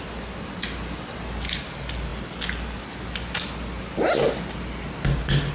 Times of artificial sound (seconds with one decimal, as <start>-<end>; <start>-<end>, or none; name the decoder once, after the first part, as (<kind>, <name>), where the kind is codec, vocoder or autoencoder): none